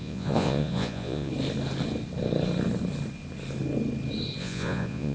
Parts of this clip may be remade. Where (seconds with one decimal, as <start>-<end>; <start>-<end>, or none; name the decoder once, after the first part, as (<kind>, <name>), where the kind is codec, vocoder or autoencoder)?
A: 0.0-1.3 (vocoder, Vocos); 4.4-5.1